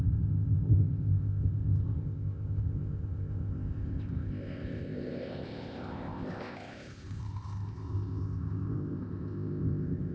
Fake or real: fake